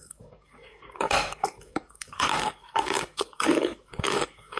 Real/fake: fake